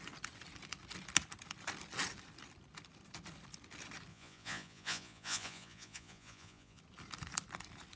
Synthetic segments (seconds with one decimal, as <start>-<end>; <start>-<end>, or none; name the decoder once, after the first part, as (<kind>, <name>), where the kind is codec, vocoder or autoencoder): 4.1-6.8 (vocoder, Vocos)